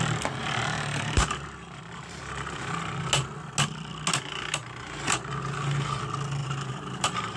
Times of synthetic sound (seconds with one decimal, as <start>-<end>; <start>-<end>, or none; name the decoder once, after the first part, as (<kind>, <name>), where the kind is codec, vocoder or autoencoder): 0.4-2.2 (vocoder, BigVGAN v2); 4.6-5.3; 6.4-7.4